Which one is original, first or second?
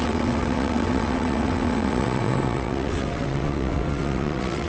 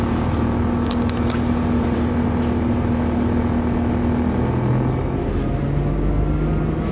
second